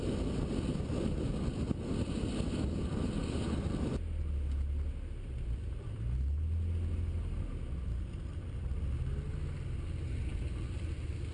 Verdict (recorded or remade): recorded